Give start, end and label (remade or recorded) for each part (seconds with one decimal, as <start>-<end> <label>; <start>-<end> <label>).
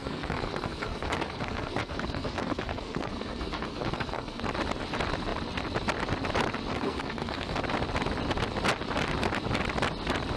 0.0-4.4 remade; 4.4-6.7 recorded; 6.7-7.6 remade; 7.6-10.4 recorded